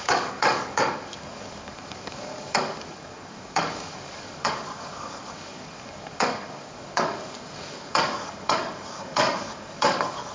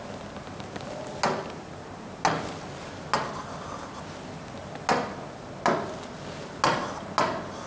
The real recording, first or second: second